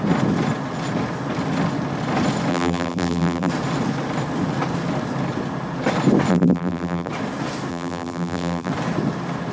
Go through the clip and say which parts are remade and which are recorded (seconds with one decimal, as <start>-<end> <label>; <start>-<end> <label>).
0.0-2.5 recorded; 2.5-3.5 remade; 3.5-6.3 recorded; 6.3-7.1 remade; 7.1-7.7 recorded; 7.7-8.7 remade; 8.7-9.5 recorded